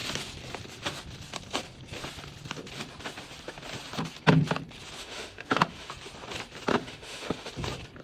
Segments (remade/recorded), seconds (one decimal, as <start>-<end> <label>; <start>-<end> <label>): 0.0-5.0 recorded; 5.0-5.9 remade; 5.9-6.7 recorded; 6.7-7.5 remade; 7.5-8.0 recorded